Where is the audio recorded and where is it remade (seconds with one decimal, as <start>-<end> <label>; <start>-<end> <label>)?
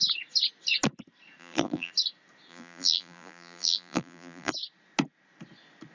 0.0-1.4 recorded; 1.4-1.9 remade; 1.9-2.5 recorded; 2.5-4.5 remade; 4.5-5.9 recorded